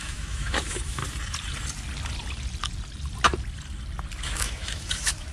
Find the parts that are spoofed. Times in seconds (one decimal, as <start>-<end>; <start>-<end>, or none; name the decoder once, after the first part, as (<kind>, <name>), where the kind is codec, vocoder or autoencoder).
0.0-1.0 (autoencoder, DAC-VAE); 4.2-5.3